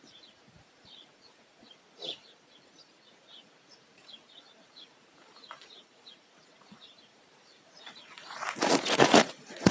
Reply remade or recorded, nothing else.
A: remade